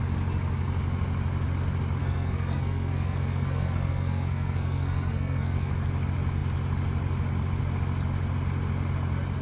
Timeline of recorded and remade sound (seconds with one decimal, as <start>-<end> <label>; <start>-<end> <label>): 0.0-2.0 recorded; 2.0-5.7 remade; 5.7-9.4 recorded